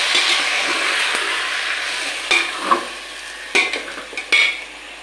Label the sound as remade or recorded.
recorded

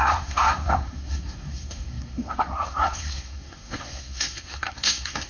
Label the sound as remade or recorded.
remade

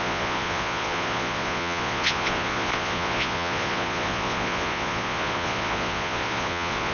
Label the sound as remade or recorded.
remade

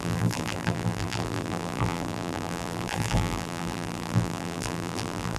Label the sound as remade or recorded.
remade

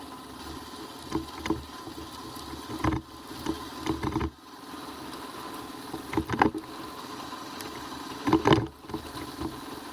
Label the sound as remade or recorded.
recorded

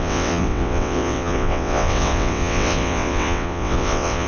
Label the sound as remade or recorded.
remade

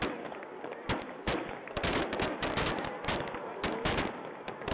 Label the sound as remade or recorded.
recorded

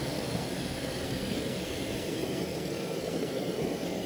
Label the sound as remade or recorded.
remade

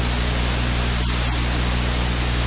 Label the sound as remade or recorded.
recorded